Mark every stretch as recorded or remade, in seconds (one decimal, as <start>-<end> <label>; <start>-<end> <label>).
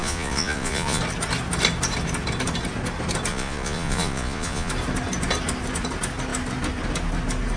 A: 0.0-1.0 remade; 1.0-3.3 recorded; 3.3-4.7 remade; 4.7-7.6 recorded